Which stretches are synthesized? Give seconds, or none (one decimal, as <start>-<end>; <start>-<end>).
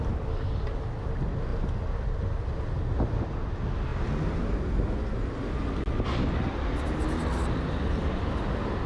none